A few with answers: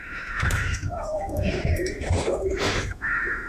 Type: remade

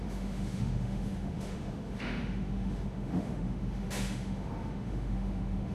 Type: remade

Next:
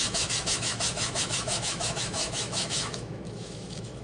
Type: remade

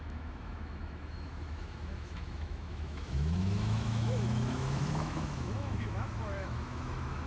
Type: remade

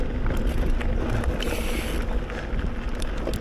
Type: recorded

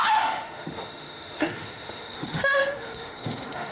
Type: remade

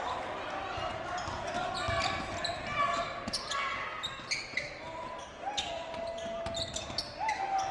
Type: recorded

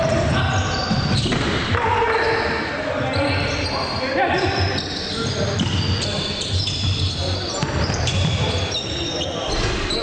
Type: recorded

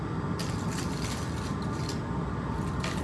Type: recorded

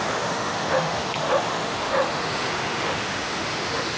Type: remade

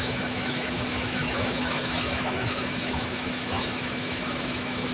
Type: remade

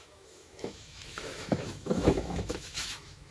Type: remade